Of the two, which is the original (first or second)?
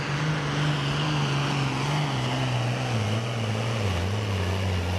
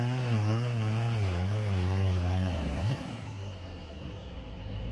first